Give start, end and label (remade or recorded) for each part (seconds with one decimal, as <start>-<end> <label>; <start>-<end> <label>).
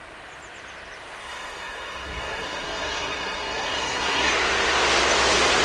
0.0-1.2 recorded; 1.2-4.3 remade; 4.3-5.6 recorded